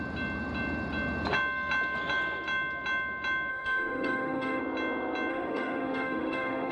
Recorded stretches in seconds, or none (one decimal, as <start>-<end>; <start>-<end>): 0.0-3.5; 4.6-5.3